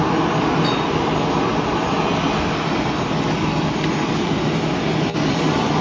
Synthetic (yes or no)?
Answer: no